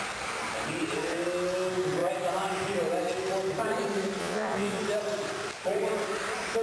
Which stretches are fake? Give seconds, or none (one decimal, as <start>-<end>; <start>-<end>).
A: 4.2-4.8